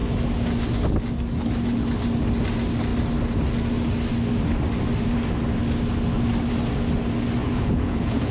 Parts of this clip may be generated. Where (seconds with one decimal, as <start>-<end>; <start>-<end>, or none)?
7.4-8.3